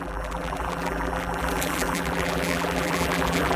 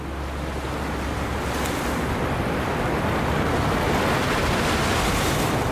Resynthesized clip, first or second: first